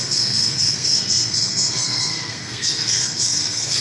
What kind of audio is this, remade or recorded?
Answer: remade